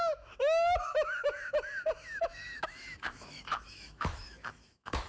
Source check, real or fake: fake